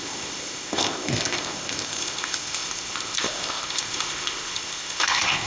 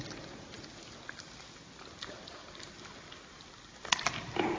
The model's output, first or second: first